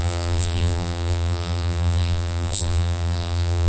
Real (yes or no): no